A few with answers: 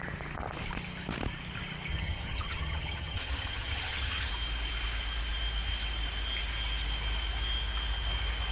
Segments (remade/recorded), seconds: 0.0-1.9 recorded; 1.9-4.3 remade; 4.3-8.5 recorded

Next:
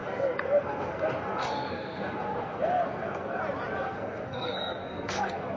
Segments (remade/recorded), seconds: 0.0-3.4 remade; 3.4-3.8 recorded; 3.8-5.6 remade

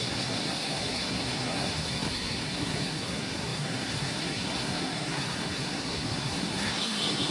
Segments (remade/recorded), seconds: 0.0-7.3 remade